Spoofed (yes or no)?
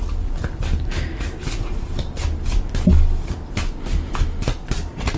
no